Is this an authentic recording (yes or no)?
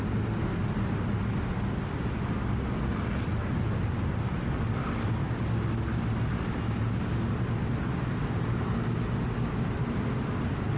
yes